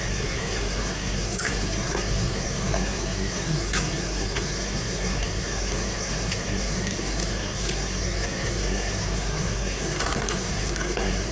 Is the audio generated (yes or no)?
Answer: yes